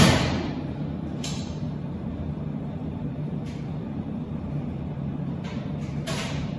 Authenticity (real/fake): fake